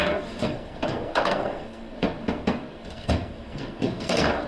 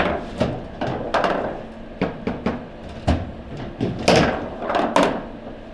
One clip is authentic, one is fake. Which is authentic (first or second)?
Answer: second